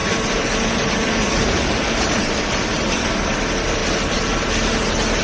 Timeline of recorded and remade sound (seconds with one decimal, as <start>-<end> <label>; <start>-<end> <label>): 0.0-3.1 remade; 3.1-5.2 recorded